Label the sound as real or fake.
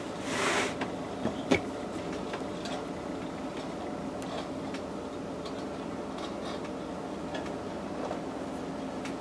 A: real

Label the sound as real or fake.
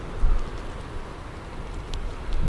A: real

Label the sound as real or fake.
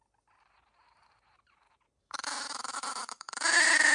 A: fake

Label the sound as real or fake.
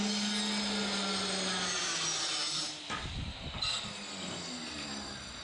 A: real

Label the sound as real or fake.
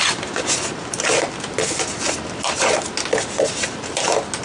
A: real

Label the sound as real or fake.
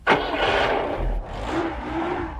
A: fake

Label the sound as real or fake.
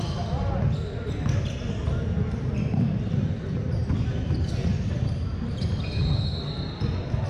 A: real